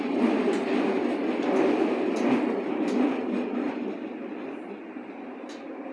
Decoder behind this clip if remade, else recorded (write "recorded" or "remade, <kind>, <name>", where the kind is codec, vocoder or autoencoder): recorded